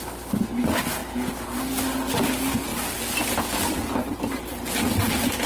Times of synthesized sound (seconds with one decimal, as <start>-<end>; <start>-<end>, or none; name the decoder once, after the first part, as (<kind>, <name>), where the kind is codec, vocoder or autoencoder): none